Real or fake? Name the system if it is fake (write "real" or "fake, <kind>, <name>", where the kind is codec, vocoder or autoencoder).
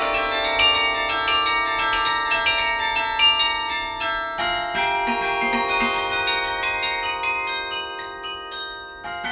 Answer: real